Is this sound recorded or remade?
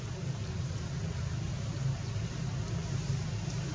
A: recorded